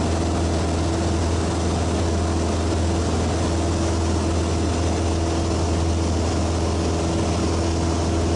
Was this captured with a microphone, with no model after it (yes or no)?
yes